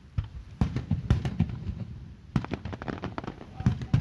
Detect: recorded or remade remade